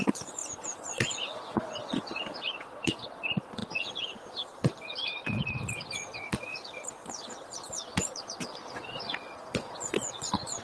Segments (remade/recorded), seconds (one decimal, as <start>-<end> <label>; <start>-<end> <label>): 0.0-10.6 remade